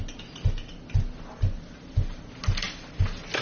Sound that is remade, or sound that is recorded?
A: recorded